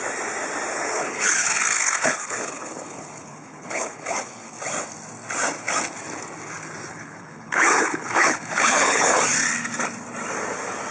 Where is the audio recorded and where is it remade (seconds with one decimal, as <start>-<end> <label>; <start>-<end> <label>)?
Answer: 0.0-0.7 recorded; 0.7-4.6 remade; 4.6-6.9 recorded; 6.9-9.2 remade; 9.2-10.9 recorded